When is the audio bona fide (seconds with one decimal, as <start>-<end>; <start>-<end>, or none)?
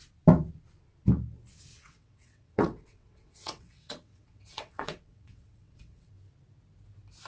0.0-1.7; 6.1-7.3